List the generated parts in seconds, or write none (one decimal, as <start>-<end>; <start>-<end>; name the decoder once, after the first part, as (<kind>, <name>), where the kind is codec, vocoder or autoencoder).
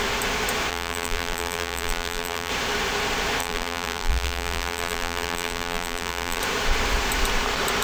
0.7-2.5 (vocoder, BigVGAN v2); 3.4-6.4